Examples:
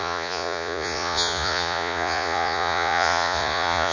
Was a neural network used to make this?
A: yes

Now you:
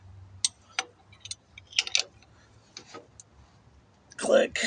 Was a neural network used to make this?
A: no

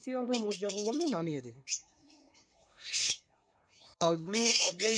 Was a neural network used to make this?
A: yes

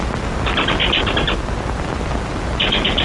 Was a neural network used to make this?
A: no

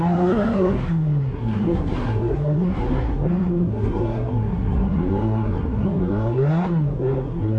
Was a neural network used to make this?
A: yes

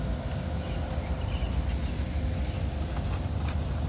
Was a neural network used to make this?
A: no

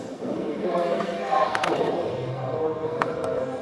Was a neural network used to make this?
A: yes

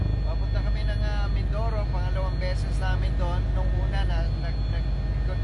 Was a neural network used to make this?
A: no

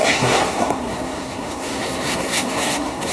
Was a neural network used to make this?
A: yes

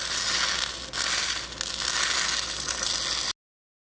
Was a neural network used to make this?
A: no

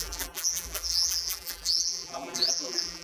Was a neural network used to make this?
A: yes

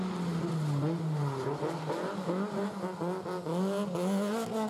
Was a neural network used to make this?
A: no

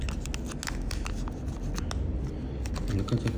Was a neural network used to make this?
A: no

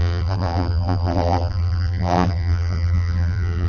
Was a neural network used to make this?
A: yes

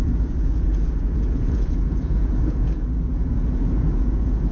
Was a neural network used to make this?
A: yes